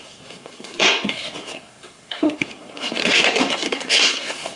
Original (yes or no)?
no